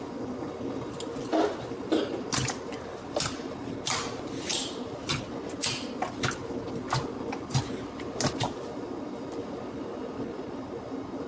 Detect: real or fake real